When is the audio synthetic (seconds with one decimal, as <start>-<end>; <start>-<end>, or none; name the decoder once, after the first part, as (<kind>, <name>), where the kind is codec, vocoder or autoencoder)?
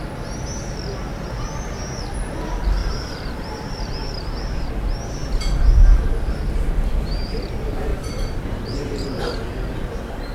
2.8-4.7 (vocoder, BigVGAN v2); 7.9-9.3